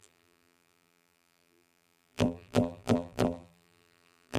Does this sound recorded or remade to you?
remade